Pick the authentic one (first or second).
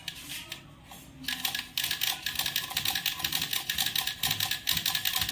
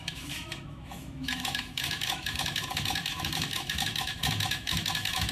first